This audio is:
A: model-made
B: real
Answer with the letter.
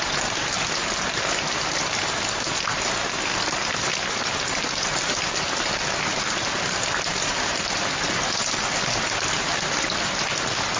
B